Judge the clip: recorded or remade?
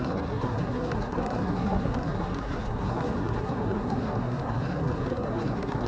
remade